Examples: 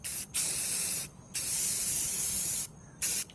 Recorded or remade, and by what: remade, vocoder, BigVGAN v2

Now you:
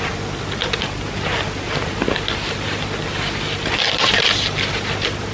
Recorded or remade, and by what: recorded